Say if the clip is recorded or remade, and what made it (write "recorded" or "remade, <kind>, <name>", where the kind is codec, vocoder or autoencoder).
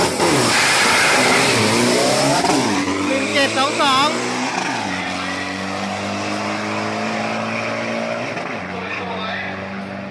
recorded